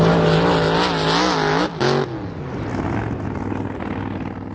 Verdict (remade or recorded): recorded